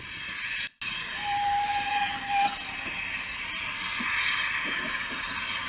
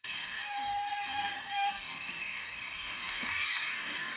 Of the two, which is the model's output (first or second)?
second